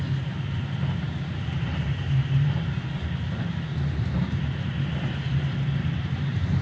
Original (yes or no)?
no